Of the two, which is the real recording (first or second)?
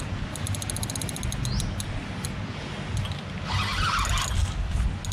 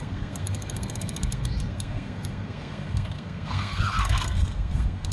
first